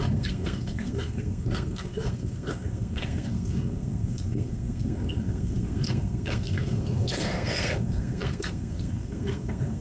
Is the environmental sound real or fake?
fake